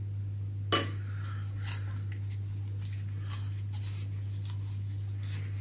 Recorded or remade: recorded